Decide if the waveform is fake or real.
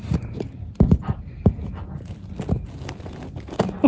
real